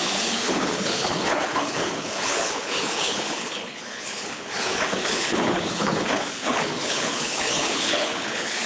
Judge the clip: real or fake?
fake